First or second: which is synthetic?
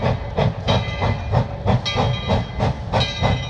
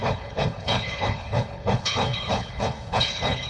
second